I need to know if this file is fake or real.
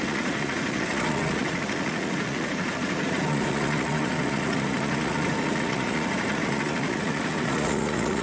fake